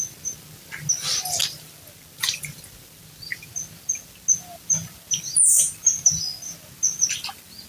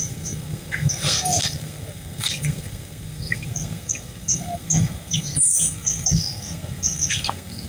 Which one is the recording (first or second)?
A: first